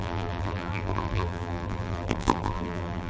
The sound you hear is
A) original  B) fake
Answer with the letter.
B